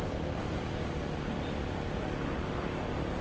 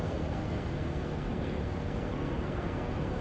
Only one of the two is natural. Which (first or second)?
first